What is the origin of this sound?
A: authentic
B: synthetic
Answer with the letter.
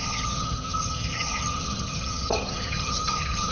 B